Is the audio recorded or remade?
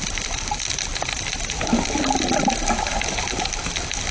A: recorded